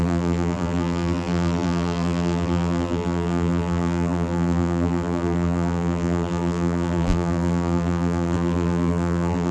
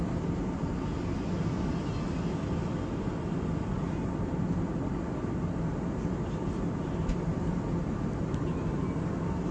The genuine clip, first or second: second